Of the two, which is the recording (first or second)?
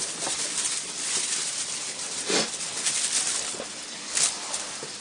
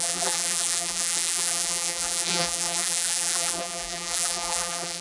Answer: first